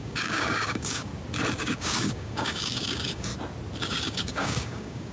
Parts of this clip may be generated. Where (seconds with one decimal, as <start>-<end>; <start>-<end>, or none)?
0.0-1.1; 1.6-3.3; 3.8-5.1